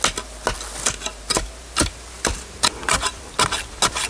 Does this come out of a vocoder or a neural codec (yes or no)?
no